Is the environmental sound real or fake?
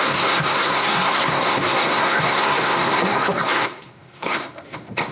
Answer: fake